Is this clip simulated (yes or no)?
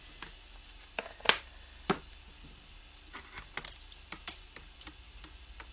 no